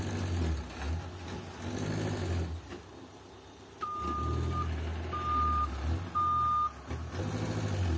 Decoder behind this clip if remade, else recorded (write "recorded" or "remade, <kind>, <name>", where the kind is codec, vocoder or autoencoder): recorded